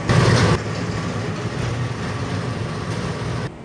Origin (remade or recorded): recorded